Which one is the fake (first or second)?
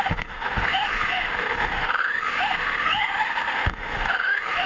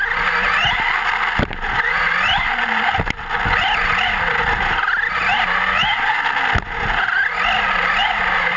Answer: first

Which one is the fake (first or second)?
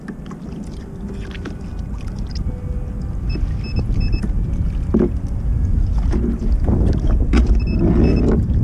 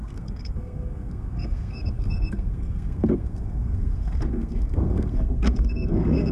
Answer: second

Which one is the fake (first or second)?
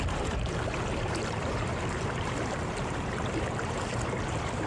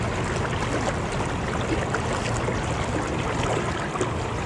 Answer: first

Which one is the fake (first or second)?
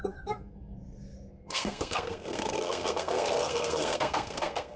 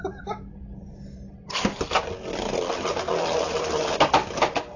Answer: first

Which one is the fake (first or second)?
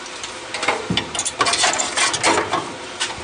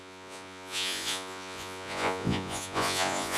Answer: second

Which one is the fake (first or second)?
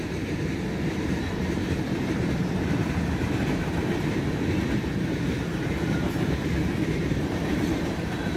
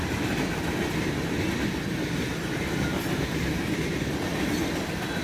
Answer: first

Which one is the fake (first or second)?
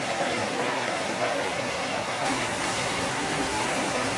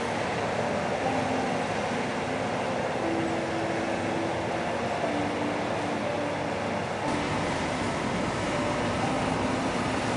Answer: first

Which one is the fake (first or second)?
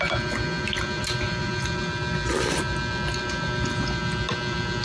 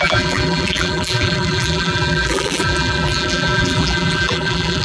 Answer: second